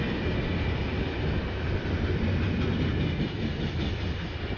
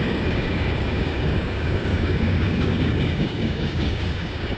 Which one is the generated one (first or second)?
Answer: second